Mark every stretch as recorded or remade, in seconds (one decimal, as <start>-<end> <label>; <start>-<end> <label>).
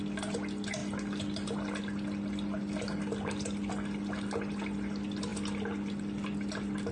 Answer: 0.0-6.9 recorded